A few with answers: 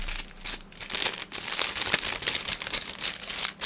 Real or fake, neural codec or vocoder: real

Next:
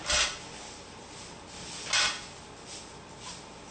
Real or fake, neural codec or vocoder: real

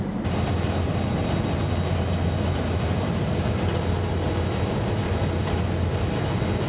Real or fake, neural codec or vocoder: real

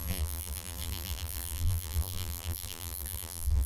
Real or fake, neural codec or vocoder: fake, vocoder, BigVGAN v2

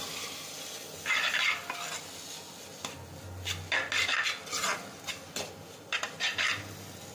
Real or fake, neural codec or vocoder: real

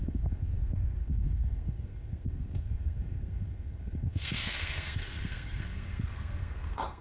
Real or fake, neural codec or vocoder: fake, codec, SNAC